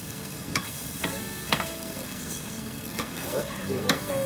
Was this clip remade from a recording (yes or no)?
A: yes